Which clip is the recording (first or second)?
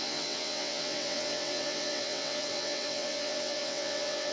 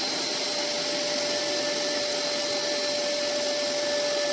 second